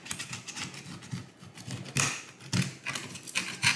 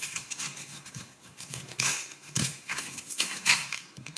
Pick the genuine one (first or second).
first